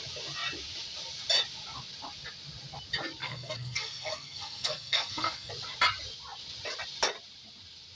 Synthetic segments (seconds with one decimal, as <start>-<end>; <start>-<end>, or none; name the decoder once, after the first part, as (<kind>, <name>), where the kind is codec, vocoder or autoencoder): 3.2-5.5 (codec, SNAC)